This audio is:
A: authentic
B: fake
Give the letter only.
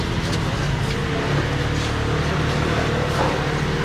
A